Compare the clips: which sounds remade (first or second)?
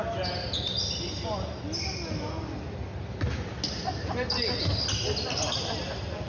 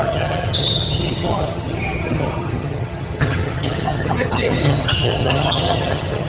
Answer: second